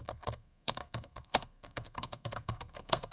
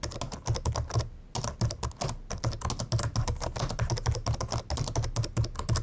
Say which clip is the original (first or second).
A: second